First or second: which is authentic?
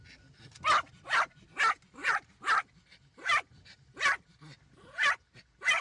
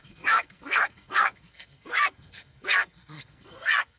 first